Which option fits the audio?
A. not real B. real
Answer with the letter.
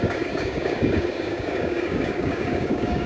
A